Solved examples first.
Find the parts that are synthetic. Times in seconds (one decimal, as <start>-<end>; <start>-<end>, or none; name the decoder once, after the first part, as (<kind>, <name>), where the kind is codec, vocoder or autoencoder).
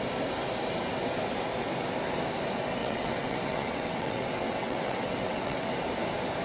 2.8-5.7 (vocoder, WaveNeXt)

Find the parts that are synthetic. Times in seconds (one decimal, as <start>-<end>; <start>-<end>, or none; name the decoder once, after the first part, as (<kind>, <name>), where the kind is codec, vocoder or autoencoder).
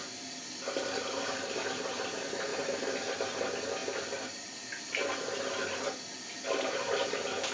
none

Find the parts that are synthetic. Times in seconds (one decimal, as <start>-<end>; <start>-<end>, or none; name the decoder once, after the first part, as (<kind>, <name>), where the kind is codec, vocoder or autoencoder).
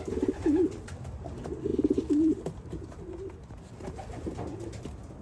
none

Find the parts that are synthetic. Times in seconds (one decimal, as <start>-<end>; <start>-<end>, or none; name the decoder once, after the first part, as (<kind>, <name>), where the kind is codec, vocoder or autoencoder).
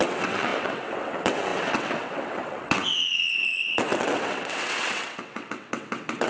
0.0-6.3 (vocoder, WaveNeXt)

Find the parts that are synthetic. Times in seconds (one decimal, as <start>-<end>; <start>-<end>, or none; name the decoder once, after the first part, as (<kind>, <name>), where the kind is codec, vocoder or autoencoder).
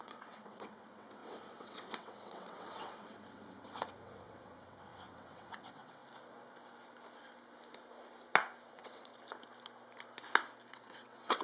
0.0-6.0 (vocoder, WaveNeXt); 8.7-9.1; 10.7-11.4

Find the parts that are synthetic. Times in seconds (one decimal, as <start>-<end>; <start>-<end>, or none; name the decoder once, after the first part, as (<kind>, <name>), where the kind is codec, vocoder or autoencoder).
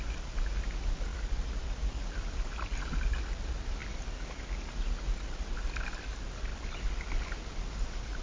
none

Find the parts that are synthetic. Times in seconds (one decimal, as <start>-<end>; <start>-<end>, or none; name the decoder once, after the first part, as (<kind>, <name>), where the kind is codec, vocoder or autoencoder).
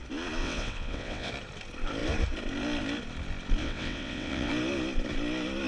0.4-1.3 (vocoder, WaveNeXt); 3.6-4.5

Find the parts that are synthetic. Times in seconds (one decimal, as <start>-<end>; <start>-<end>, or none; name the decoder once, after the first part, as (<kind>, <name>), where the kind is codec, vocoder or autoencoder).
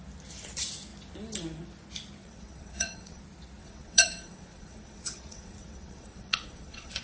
2.2-3.2 (vocoder, WaveNeXt); 3.6-7.0